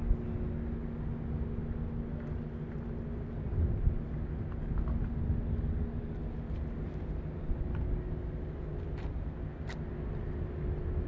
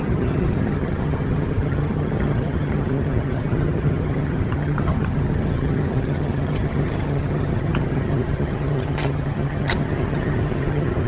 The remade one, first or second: second